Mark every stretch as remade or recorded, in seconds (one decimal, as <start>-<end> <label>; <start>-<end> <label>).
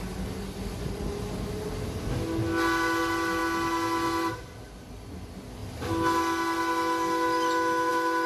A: 0.0-8.3 recorded